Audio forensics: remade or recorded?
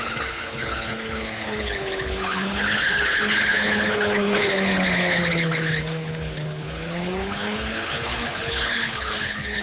remade